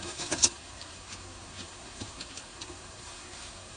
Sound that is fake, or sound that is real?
fake